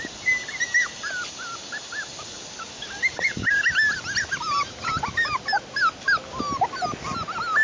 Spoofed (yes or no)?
no